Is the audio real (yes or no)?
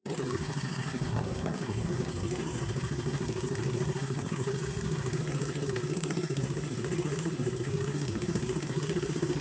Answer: no